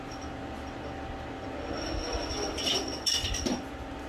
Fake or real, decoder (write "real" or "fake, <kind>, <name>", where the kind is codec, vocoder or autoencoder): real